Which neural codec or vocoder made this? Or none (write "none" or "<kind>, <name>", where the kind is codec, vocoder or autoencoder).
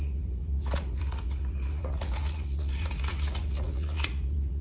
vocoder, Vocos